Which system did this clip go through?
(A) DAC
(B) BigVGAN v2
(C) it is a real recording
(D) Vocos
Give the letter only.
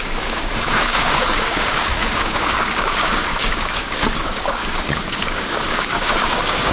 A